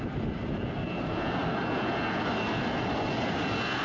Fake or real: real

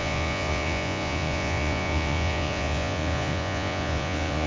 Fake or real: fake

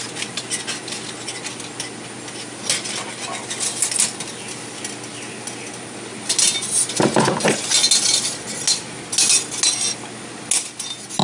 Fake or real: real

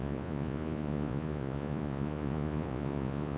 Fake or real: fake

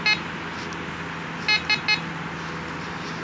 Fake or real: real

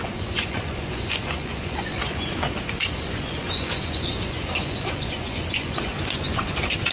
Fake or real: fake